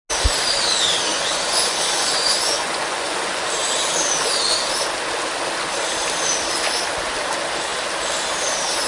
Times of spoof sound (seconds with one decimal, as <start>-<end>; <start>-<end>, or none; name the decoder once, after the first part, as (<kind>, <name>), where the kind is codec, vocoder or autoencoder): 1.1-3.5 (vocoder, Vocos)

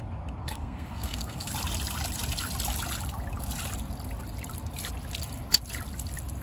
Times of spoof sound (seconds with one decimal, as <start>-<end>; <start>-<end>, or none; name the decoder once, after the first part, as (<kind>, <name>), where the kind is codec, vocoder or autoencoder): 0.4-1.5 (codec, SNAC)

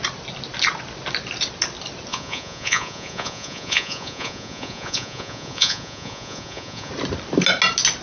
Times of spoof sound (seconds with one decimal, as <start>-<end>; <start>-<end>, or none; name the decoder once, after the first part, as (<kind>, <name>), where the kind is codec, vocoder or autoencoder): 2.1-6.9 (vocoder, Vocos)

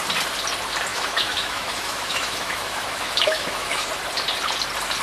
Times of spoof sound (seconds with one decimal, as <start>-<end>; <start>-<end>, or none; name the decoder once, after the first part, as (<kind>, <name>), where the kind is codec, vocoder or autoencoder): 0.9-3.9 (autoencoder, DAC-VAE)

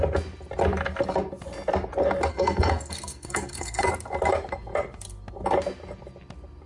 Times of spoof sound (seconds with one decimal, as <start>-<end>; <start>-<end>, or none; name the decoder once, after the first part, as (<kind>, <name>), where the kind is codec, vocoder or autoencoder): 2.3-3.9 (codec, SNAC)

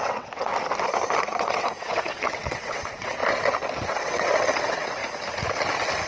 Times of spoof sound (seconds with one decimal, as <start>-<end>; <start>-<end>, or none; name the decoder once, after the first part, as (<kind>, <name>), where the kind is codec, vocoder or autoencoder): 0.0-0.5 (vocoder, WaveNeXt); 1.2-3.2; 3.9-5.0

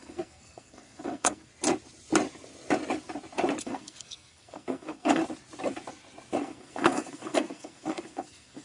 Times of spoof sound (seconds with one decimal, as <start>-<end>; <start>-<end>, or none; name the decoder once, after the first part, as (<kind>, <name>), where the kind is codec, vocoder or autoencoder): 0.0-1.5 (codec, SNAC); 3.6-5.2; 6.4-8.6